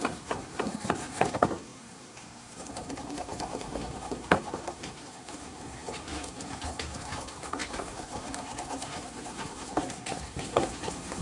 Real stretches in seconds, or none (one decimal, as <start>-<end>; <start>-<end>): none